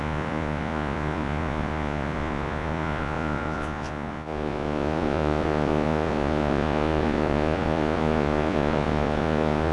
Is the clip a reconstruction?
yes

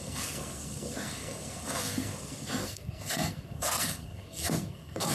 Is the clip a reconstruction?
yes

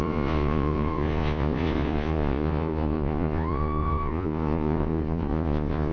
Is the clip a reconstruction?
yes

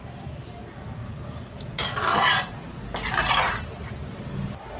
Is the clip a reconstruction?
no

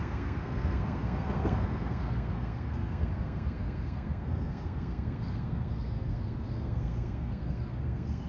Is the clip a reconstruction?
yes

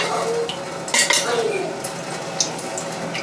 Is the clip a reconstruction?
no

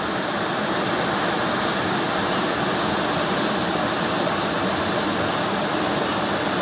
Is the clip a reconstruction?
no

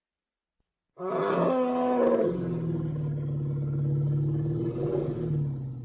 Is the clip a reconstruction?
no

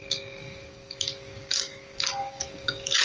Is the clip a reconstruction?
yes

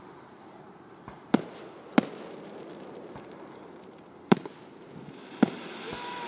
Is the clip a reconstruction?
yes